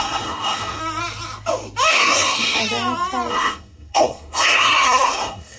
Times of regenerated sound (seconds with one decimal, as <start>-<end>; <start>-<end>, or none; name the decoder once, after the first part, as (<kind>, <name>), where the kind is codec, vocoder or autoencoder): 0.0-0.8 (codec, SNAC); 1.9-2.6; 3.3-5.6